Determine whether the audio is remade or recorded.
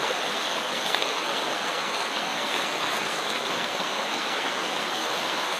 remade